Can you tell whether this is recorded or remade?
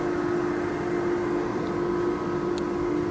recorded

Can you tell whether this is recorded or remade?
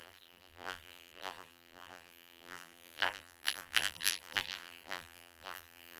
remade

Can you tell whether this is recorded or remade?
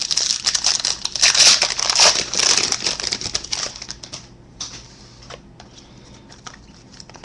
recorded